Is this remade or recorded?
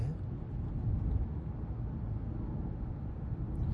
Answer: recorded